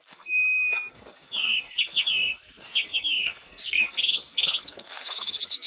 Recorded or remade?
remade